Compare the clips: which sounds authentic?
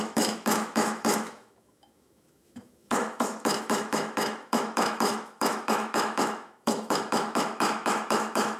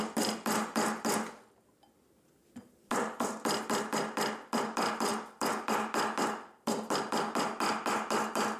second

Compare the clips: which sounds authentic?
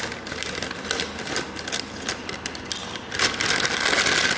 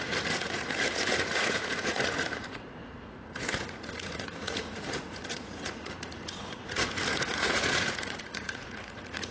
first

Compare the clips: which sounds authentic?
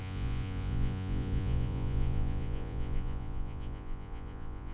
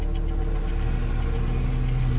second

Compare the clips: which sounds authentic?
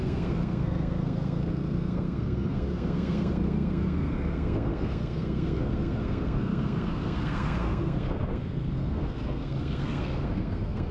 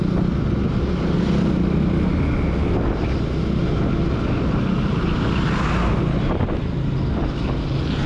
second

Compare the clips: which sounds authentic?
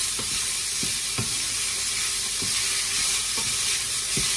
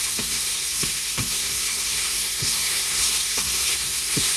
first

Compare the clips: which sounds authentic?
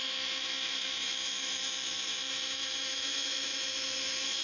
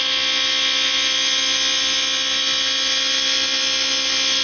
second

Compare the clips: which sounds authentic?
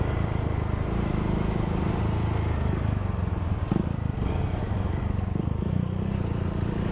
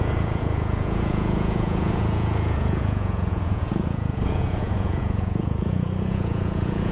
first